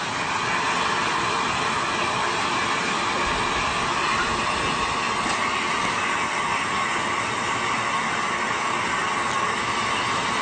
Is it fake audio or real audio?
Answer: real